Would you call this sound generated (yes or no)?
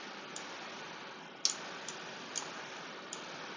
no